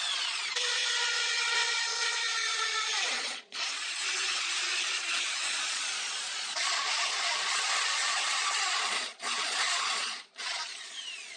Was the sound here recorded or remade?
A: remade